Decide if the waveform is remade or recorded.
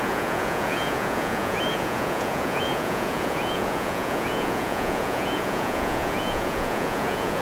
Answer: remade